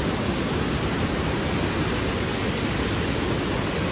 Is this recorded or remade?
recorded